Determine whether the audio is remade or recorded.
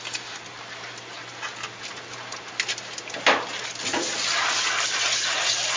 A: recorded